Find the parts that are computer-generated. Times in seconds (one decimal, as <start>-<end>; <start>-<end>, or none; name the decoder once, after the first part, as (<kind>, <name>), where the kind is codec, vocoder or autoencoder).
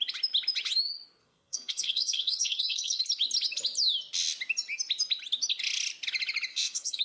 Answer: 1.2-3.0 (codec, SNAC); 6.5-7.0